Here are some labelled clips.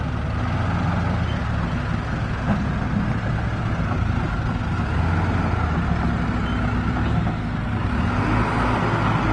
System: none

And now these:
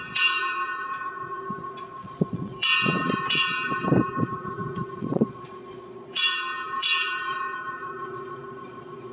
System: vocoder, Vocos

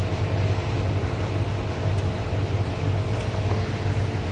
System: none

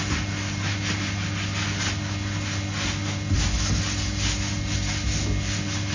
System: none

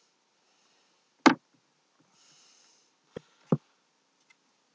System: none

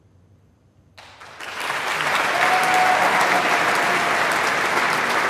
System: none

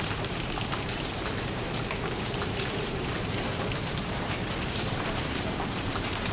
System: vocoder, BigVGAN v2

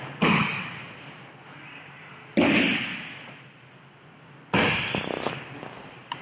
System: none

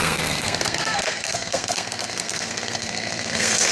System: codec, SNAC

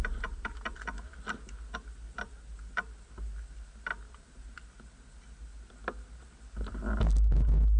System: none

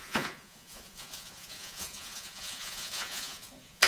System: vocoder, Vocos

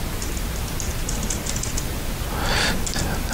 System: none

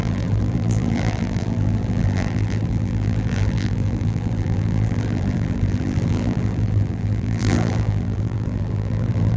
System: vocoder, BigVGAN v2